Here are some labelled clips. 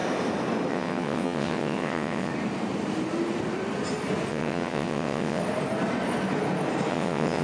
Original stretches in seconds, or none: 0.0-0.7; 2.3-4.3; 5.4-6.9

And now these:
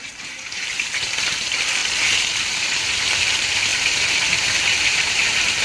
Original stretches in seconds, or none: 1.8-2.5

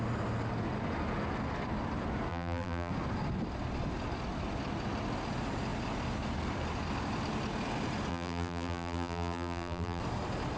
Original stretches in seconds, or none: 0.0-2.3; 2.9-8.1; 10.0-10.6

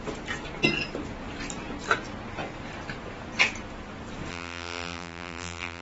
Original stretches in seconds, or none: 0.0-4.3

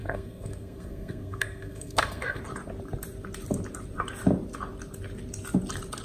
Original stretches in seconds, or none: 2.4-6.0